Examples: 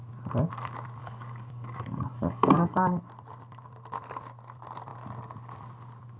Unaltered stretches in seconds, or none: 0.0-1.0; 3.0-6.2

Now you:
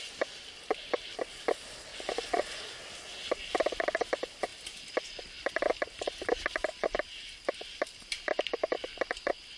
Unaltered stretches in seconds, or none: 0.0-1.9; 2.8-9.6

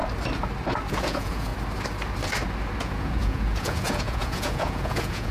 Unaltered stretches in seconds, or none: 0.0-0.9; 1.5-2.8

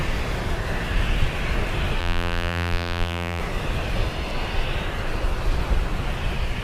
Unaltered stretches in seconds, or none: 0.0-2.0; 3.4-6.6

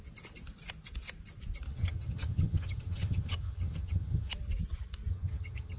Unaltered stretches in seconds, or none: 0.0-1.7; 4.3-5.1

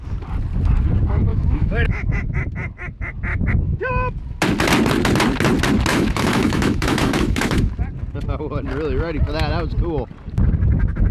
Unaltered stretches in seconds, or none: 0.0-1.3; 2.1-3.3; 3.9-5.9; 7.7-11.1

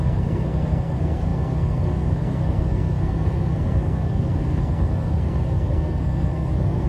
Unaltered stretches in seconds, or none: none

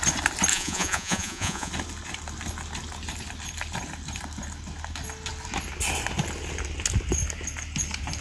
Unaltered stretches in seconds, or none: 0.0-0.5; 1.7-8.2